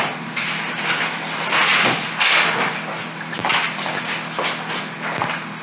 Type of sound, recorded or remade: recorded